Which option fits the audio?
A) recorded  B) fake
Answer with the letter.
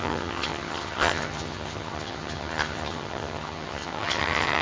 B